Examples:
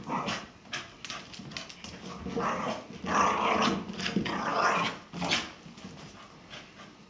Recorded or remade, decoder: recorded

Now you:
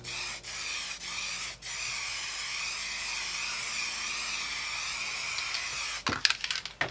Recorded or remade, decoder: recorded